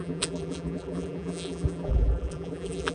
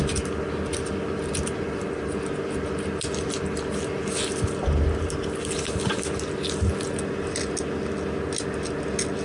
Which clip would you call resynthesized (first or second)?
first